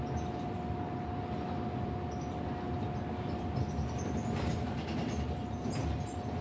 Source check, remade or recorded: recorded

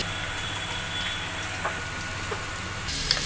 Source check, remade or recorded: recorded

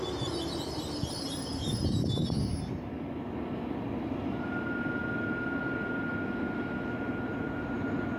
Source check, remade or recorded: recorded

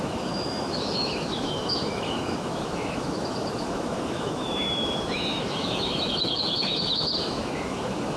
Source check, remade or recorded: remade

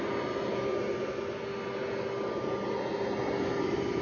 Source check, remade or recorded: recorded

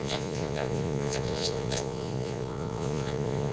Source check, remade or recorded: remade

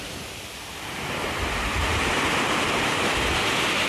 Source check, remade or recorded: recorded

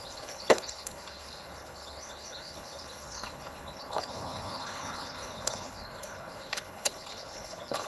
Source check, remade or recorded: remade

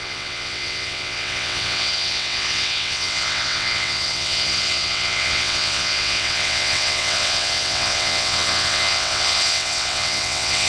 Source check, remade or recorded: remade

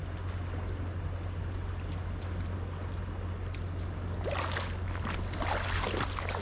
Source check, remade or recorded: recorded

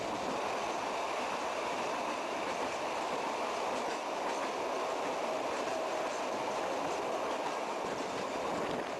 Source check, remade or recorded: recorded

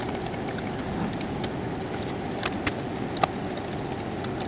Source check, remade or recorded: recorded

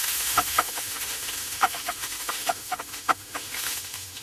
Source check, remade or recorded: remade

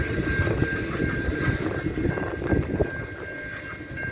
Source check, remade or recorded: recorded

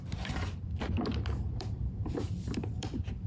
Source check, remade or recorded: remade